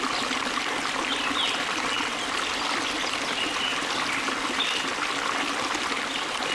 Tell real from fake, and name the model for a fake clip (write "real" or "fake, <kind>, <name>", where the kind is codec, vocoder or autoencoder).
real